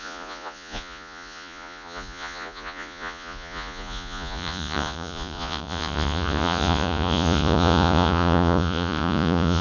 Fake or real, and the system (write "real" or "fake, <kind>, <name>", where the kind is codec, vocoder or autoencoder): fake, vocoder, Vocos